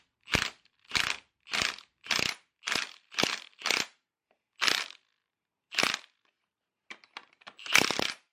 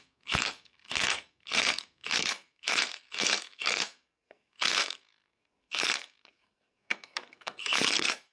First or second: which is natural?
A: first